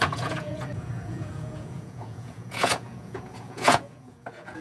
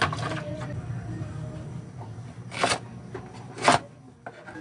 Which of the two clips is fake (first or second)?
first